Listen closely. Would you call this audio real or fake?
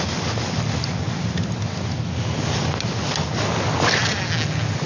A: real